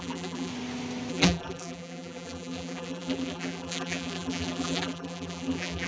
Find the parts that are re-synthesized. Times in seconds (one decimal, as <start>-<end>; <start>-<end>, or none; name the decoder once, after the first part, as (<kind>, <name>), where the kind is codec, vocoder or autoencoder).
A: 0.0-0.5 (vocoder, BigVGAN v2); 1.1-5.9